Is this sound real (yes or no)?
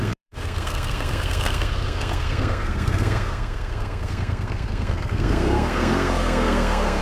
no